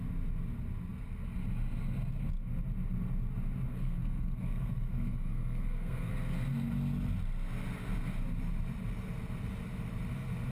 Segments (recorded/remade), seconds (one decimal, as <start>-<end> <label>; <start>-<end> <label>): 0.0-3.7 recorded; 3.7-6.1 remade; 6.1-10.5 recorded